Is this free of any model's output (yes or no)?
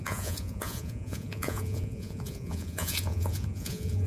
no